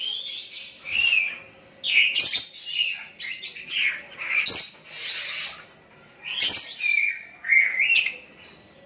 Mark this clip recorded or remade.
recorded